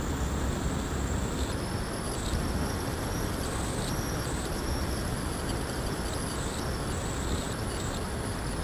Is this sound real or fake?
real